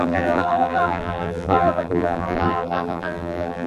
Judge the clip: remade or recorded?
remade